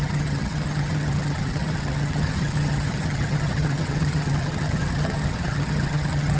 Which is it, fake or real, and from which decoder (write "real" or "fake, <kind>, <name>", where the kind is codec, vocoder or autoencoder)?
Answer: fake, vocoder, HiFi-GAN